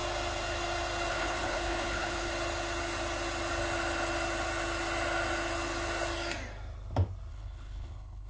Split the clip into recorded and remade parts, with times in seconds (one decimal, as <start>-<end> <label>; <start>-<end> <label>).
0.0-1.1 recorded; 1.1-2.3 remade; 2.3-7.3 recorded; 7.3-8.3 remade